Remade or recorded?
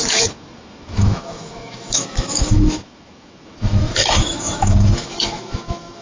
remade